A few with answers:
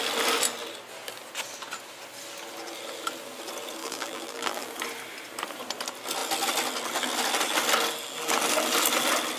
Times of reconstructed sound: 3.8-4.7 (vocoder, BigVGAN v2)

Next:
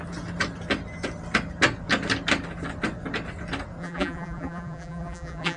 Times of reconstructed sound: 3.8-5.6 (vocoder, BigVGAN v2)

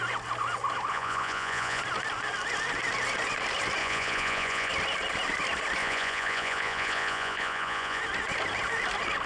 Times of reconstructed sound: 0.9-1.8 (vocoder, Vocos); 3.8-4.7; 5.8-8.0

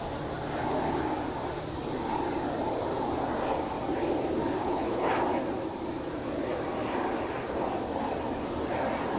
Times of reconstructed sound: 4.6-5.1 (codec, HILCodec)

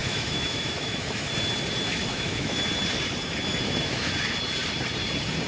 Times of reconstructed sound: 0.0-1.3 (autoencoder, DAC-VAE); 1.9-2.7; 3.5-4.1